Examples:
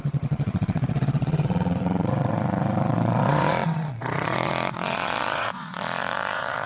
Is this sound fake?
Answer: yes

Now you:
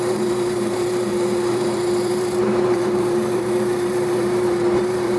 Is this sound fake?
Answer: yes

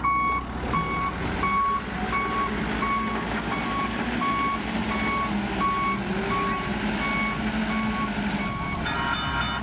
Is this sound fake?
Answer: no